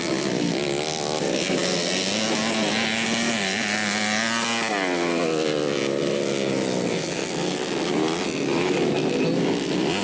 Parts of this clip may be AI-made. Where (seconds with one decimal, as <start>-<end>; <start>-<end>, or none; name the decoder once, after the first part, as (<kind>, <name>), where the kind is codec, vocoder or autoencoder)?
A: none